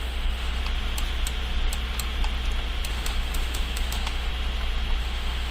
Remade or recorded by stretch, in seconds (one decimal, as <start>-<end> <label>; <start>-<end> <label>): 0.0-0.6 remade; 0.6-2.9 recorded; 2.9-4.3 remade; 4.3-5.0 recorded; 5.0-5.5 remade